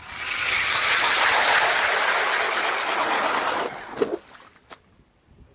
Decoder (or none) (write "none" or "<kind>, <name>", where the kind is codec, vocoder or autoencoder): none